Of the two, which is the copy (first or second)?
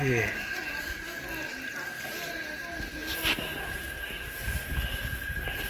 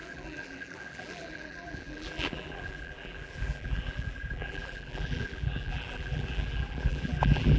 second